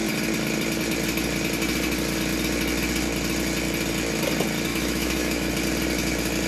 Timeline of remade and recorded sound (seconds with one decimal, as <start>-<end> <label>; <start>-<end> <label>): 0.0-4.7 recorded; 4.7-5.5 remade; 5.5-6.5 recorded